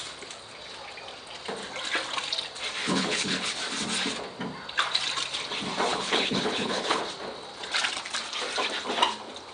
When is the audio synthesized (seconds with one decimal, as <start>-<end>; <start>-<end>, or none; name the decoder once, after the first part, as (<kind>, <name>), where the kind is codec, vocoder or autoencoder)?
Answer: 2.8-3.5 (codec, HILCodec); 5.9-7.0